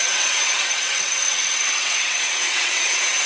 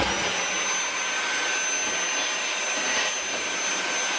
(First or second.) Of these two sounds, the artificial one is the first